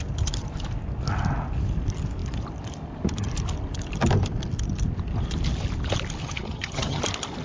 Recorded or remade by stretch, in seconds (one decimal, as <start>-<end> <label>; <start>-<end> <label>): 0.0-6.2 recorded; 6.2-7.0 remade; 7.0-7.4 recorded